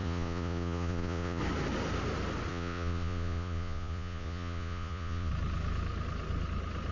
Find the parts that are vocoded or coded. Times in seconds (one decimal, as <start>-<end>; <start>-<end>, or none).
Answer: 0.0-1.4; 2.5-5.3